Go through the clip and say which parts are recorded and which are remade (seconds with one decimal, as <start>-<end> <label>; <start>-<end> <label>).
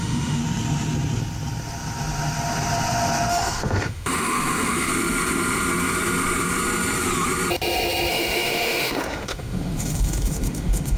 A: 0.0-0.4 remade; 0.4-3.3 recorded; 3.3-4.9 remade; 4.9-8.1 recorded; 8.1-11.0 remade